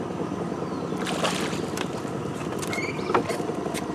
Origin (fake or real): real